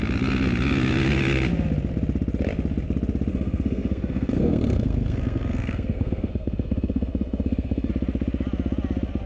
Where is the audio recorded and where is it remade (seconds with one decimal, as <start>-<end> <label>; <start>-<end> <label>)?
0.0-3.3 recorded; 3.3-7.9 remade; 7.9-9.3 recorded